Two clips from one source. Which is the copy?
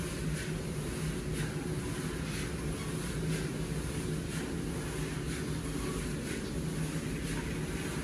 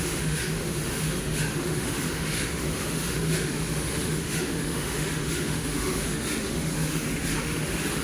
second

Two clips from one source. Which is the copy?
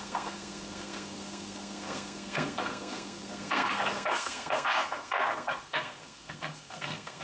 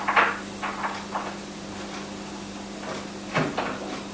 first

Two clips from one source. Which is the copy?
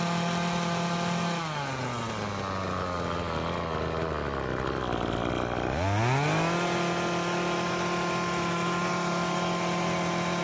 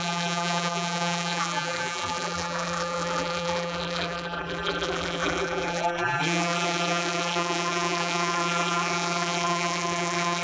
second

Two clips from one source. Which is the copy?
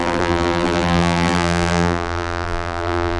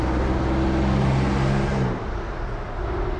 first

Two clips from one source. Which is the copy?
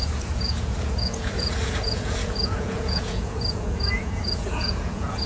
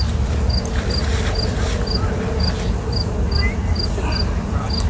first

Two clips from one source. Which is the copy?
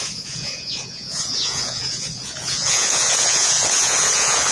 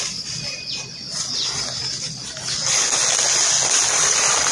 first